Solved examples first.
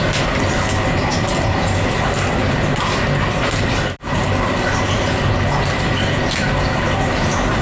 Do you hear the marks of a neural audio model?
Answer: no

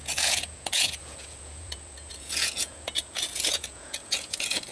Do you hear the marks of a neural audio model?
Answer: yes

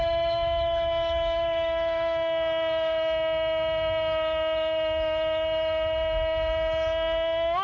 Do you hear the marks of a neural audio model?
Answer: yes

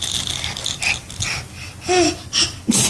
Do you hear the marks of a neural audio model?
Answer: no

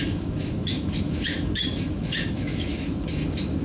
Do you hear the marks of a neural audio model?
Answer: yes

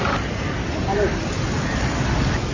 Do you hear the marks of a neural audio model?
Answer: no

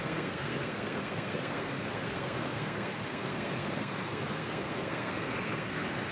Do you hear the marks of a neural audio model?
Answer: yes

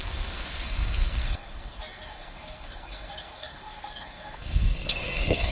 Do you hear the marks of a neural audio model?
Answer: yes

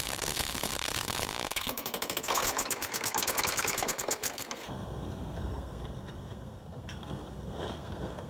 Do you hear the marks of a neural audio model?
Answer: yes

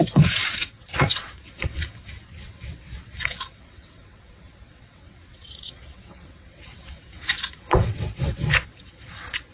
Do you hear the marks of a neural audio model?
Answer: yes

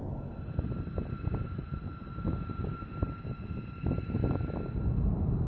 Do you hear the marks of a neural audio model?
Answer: no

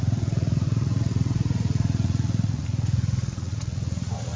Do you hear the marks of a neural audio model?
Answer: yes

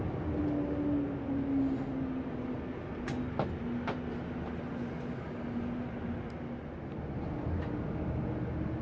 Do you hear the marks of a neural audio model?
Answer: no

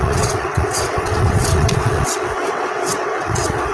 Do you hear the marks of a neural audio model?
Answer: yes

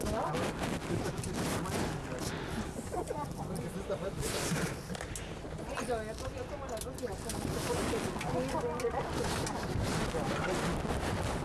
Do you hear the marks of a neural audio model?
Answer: no